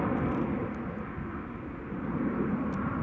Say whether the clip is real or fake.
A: real